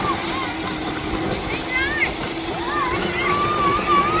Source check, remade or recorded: recorded